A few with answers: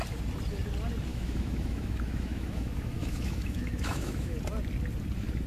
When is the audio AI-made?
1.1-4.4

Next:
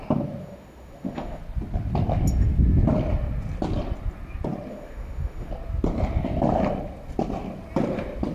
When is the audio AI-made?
0.4-1.4; 4.7-5.5

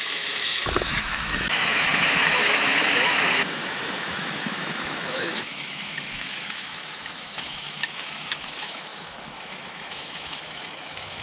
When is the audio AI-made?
0.0-11.2

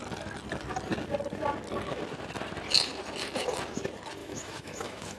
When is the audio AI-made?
4.2-5.2